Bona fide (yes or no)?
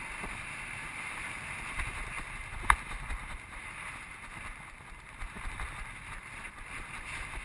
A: yes